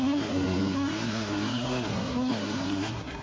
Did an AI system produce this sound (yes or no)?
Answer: yes